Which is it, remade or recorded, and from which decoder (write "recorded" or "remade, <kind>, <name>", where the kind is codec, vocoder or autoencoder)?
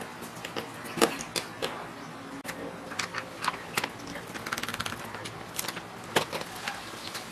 recorded